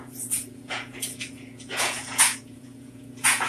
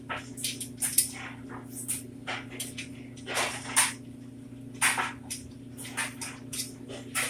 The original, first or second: second